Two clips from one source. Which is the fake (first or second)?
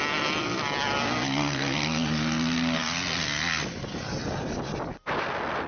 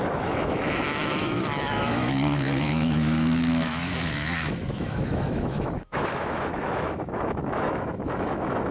second